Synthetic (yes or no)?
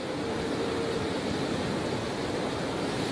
no